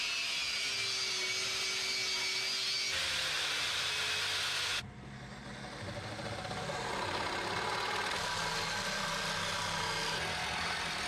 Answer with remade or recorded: recorded